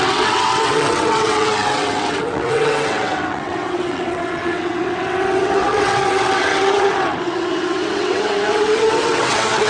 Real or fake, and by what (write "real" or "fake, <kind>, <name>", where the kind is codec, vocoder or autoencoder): fake, vocoder, WaveNeXt